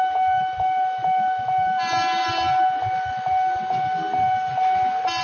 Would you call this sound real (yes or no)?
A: yes